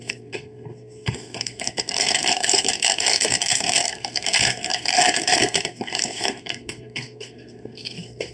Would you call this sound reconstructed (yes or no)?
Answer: yes